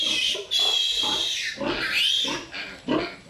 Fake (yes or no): no